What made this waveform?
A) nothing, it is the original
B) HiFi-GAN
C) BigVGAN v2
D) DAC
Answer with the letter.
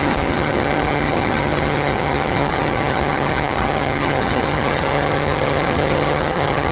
B